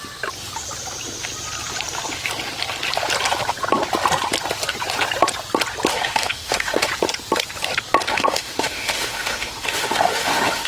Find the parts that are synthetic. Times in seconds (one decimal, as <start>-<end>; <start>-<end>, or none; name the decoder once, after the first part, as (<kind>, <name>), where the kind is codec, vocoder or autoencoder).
5.9-6.9 (autoencoder, DAC-VAE); 8.1-10.7